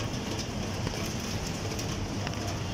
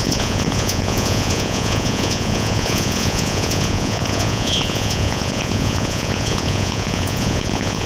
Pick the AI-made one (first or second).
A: second